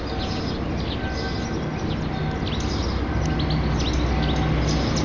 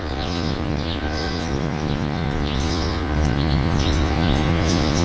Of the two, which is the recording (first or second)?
first